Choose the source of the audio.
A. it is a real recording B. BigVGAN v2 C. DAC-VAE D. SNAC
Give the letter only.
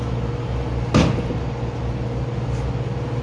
A